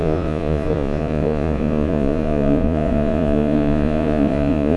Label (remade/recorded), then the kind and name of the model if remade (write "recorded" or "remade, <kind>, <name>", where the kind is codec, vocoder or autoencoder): remade, vocoder, Vocos